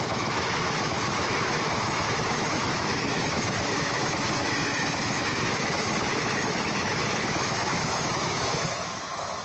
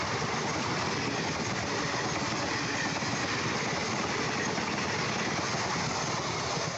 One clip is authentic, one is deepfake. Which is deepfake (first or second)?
first